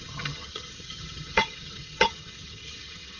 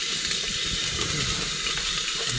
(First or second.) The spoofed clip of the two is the first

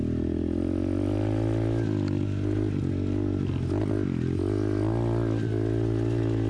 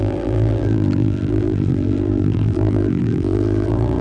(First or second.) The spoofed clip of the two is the second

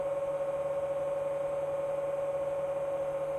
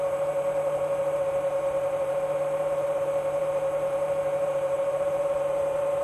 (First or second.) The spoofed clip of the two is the second